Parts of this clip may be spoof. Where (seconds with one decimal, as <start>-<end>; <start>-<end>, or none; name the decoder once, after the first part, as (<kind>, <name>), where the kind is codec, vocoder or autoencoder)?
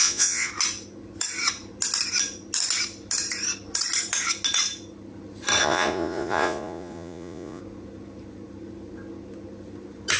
0.0-0.5 (vocoder, Vocos); 5.6-7.6